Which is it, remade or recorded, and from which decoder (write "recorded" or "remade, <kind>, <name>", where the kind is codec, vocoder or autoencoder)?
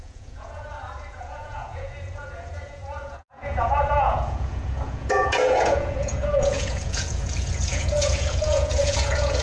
remade, vocoder, Vocos